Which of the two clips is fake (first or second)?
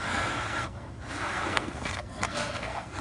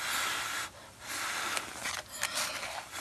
first